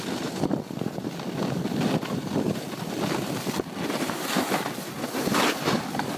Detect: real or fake real